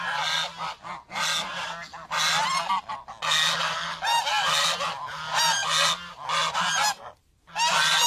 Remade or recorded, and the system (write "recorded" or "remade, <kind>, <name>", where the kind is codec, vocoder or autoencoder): recorded